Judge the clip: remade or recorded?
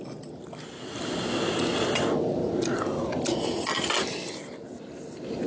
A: recorded